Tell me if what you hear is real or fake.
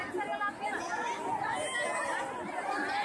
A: real